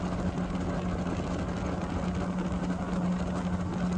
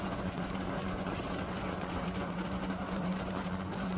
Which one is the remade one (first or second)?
second